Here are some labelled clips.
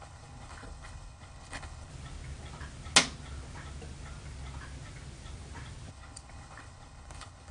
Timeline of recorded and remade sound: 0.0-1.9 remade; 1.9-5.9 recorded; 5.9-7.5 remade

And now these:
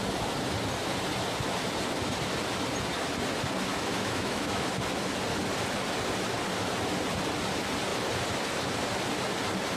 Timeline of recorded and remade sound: 0.0-3.7 recorded; 3.7-4.7 remade; 4.7-9.8 recorded

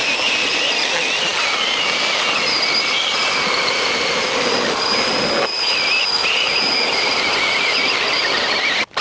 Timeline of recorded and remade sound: 0.0-6.2 recorded; 6.2-6.9 remade; 6.9-9.0 recorded